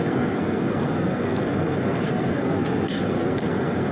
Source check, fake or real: fake